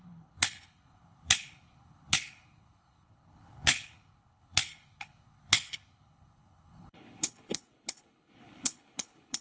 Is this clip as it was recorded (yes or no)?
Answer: no